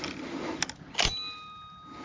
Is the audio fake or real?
real